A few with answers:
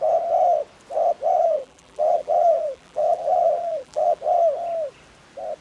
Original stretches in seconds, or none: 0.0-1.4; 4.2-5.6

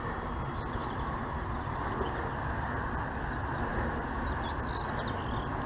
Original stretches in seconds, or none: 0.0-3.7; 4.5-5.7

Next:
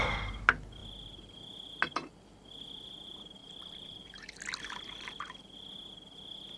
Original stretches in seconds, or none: 0.0-3.4; 4.4-6.6

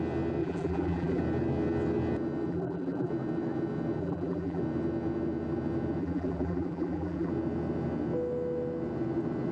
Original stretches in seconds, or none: 0.0-0.4; 1.2-2.5; 3.1-4.0; 4.6-6.0; 7.3-9.5

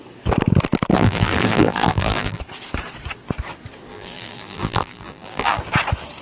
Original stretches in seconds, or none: 0.0-0.9; 2.4-3.9; 5.6-6.2

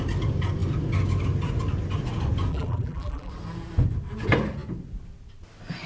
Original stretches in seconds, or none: 0.0-2.5; 3.3-5.9

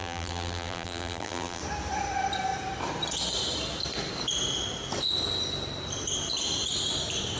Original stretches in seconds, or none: 1.6-7.4